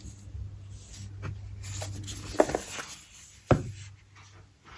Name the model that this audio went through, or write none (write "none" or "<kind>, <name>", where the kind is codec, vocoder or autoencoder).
none